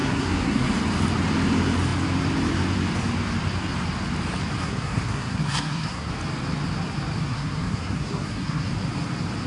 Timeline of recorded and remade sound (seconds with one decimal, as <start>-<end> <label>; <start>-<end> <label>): 0.0-0.7 remade; 0.7-4.6 recorded; 4.6-6.1 remade; 6.1-7.3 recorded; 7.3-8.7 remade; 8.7-9.5 recorded